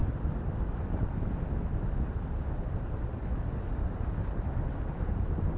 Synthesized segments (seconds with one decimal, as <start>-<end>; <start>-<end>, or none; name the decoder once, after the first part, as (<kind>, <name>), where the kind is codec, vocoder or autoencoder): none